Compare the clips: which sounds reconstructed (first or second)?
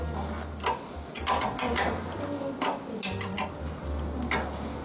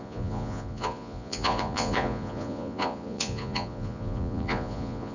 second